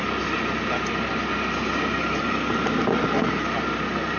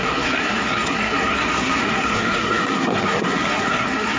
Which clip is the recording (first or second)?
first